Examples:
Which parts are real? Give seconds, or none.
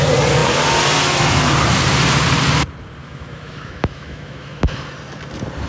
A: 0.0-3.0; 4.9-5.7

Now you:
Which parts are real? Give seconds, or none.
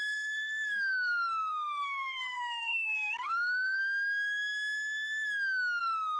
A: 3.8-5.8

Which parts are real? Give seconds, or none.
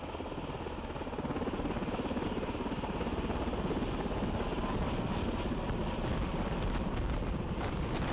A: 0.0-8.1